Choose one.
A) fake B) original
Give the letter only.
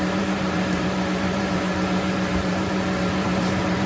A